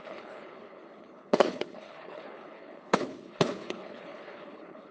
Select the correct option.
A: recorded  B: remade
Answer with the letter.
B